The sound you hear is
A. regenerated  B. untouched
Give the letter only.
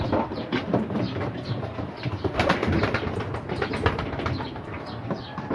A